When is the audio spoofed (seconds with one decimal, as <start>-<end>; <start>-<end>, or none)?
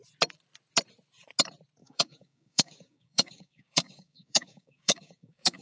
1.8-5.6